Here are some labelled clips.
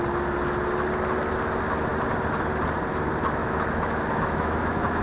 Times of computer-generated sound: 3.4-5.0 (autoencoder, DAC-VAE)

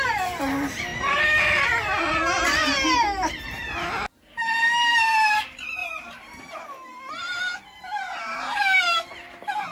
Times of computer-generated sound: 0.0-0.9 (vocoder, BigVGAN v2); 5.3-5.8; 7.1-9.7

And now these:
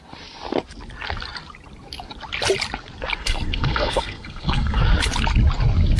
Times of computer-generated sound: 3.2-4.8 (codec, SNAC)

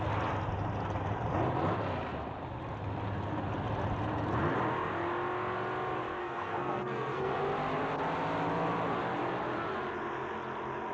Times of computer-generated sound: 6.2-7.4 (codec, SNAC)

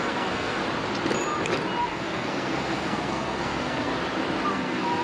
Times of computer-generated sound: 0.0-0.6 (codec, SNAC); 1.8-3.9; 4.5-5.0

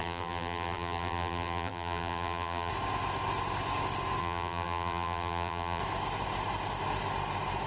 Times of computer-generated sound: 0.0-2.7 (vocoder, BigVGAN v2); 4.2-5.8